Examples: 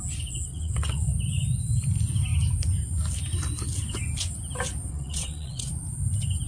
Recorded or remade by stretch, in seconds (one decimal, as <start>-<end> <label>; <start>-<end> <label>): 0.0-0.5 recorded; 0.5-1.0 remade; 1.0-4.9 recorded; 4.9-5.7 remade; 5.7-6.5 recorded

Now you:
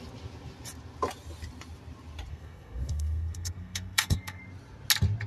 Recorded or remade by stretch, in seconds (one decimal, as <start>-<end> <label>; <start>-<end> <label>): 0.0-2.3 recorded; 2.3-4.4 remade; 4.4-5.3 recorded

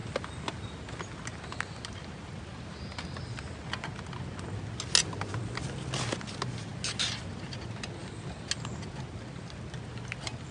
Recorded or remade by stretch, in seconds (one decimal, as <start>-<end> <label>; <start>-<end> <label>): 0.0-10.5 recorded

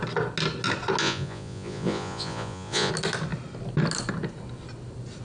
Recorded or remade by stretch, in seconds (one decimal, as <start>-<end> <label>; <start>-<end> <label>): 0.0-1.0 recorded; 1.0-2.9 remade; 2.9-5.2 recorded

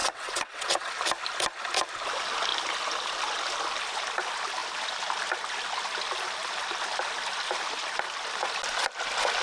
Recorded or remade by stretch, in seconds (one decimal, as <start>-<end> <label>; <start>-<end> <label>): 0.0-0.9 remade; 0.9-9.4 recorded

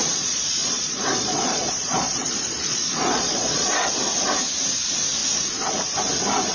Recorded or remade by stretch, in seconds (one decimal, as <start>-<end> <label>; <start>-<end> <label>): 0.0-3.9 remade; 3.9-6.5 recorded